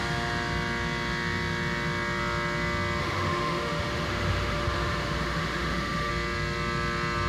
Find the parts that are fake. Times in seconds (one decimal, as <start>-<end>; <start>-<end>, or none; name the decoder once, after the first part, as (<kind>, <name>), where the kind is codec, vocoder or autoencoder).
3.0-6.1 (autoencoder, DAC-VAE)